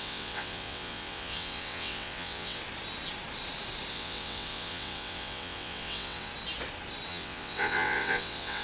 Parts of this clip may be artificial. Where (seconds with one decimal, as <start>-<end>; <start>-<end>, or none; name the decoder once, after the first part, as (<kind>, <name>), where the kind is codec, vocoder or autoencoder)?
0.0-2.6 (vocoder, WaveNeXt); 3.9-6.3; 7.1-8.6